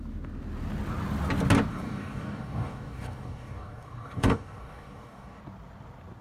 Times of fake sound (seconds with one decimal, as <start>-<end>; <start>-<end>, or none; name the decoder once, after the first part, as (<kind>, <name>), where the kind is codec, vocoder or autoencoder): 1.7-5.4 (codec, DAC)